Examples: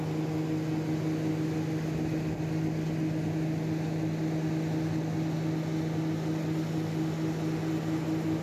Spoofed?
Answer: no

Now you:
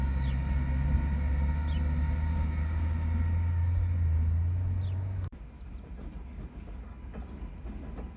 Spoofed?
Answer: no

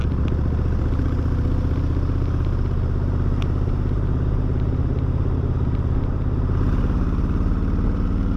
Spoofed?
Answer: no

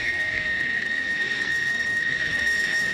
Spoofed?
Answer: yes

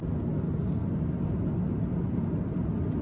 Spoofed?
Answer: no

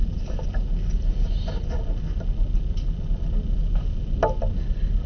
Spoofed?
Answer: no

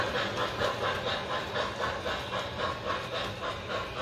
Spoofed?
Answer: no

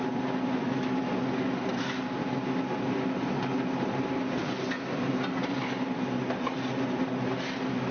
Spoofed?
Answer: no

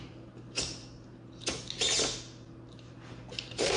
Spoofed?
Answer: no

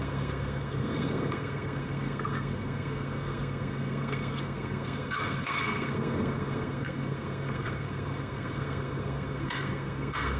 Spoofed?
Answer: yes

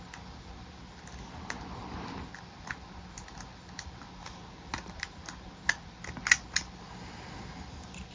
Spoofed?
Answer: no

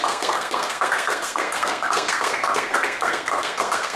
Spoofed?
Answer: yes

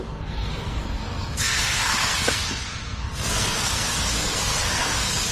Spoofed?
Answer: yes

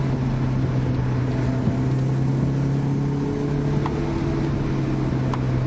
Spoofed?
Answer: no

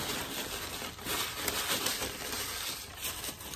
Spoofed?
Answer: no